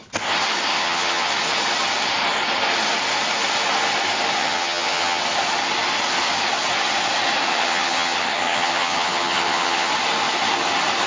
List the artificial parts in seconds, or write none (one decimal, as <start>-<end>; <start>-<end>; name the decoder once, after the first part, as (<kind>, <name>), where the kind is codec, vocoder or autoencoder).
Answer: 0.7-1.3 (vocoder, HiFi-GAN); 4.4-5.2; 7.5-9.9